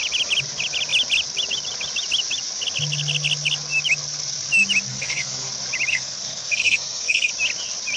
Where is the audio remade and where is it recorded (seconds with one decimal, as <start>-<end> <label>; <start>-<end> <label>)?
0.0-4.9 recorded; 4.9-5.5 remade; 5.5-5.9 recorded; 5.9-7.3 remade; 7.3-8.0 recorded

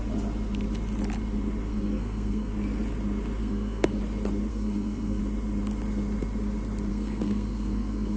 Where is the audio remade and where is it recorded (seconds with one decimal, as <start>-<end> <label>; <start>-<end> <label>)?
0.0-1.7 recorded; 1.7-2.5 remade; 2.5-3.4 recorded; 3.4-4.0 remade; 4.0-4.5 recorded; 4.5-5.2 remade; 5.2-6.9 recorded; 6.9-8.2 remade

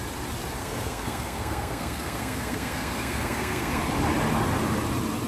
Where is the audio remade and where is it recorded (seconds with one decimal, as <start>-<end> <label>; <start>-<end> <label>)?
0.0-0.6 recorded; 0.6-3.8 remade; 3.8-5.3 recorded

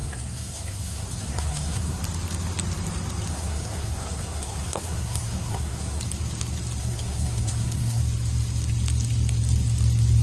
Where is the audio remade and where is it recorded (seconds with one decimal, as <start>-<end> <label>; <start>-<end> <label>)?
0.0-2.0 remade; 2.0-3.3 recorded; 3.3-6.0 remade; 6.0-6.8 recorded; 6.8-8.0 remade; 8.0-10.2 recorded

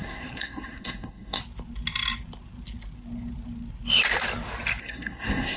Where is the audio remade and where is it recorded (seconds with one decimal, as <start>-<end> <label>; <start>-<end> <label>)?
0.0-1.4 remade; 1.4-4.8 recorded; 4.8-5.6 remade

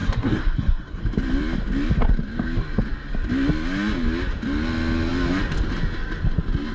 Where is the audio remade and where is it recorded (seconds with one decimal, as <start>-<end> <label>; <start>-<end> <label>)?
0.0-1.0 remade; 1.0-6.7 recorded

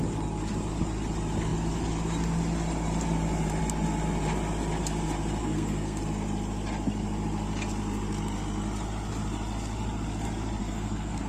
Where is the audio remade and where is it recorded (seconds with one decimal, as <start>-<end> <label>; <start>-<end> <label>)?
0.0-5.4 recorded; 5.4-6.0 remade; 6.0-10.6 recorded; 10.6-11.3 remade

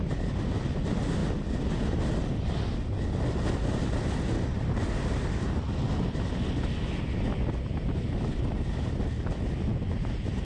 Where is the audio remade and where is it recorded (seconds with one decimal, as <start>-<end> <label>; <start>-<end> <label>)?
0.0-10.4 recorded